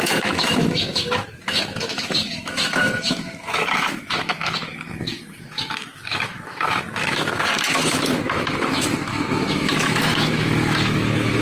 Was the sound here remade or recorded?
remade